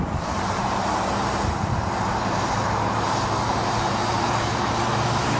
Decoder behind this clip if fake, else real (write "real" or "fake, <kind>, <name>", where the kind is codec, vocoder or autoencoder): fake, vocoder, BigVGAN v2